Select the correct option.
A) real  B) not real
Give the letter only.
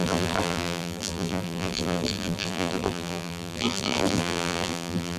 B